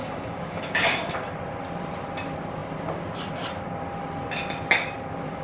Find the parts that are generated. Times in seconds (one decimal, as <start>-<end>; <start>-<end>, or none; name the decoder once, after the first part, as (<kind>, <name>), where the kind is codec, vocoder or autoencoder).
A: 0.0-1.3 (codec, DAC)